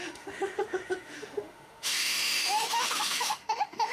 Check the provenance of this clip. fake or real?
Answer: fake